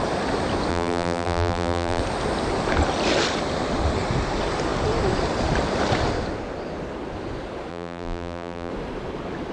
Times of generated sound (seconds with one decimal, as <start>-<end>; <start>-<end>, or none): 0.7-2.0; 7.7-8.7